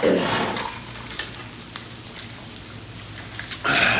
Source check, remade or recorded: recorded